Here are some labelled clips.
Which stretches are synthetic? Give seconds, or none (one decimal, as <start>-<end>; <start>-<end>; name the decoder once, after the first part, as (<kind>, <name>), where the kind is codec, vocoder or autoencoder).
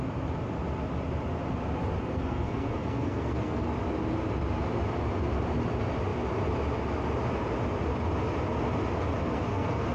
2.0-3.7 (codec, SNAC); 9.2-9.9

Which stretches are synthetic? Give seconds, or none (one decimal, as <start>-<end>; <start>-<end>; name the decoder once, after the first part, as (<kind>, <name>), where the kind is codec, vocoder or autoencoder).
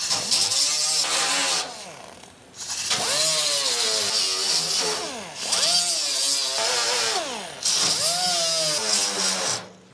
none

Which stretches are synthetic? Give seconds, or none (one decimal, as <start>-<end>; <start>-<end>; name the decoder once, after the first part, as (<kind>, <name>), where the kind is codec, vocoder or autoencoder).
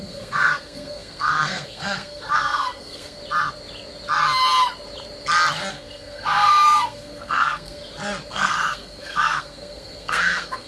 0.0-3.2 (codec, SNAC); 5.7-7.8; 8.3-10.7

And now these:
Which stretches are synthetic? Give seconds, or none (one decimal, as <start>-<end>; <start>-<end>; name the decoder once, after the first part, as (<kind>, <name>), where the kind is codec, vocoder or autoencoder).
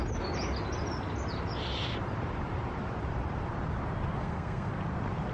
4.2-4.7 (codec, SNAC)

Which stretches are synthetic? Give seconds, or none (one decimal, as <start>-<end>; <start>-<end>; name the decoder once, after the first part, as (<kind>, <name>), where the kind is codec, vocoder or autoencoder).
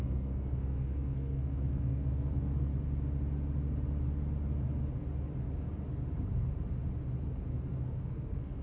0.0-2.7 (codec, SNAC); 7.5-8.6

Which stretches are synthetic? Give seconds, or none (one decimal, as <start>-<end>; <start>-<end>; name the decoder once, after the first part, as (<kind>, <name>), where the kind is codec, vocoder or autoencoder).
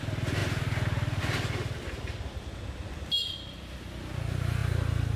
none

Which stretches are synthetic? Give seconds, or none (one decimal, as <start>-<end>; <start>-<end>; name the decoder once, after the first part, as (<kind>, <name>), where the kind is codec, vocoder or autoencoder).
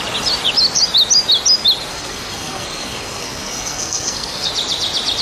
1.9-4.5 (codec, SNAC)